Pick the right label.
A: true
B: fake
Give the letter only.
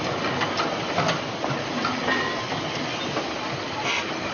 A